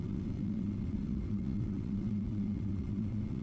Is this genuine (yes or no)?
no